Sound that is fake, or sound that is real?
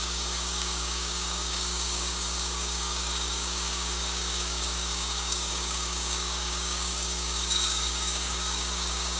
fake